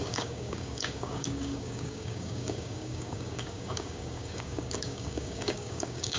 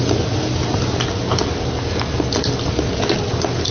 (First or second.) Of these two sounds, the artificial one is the first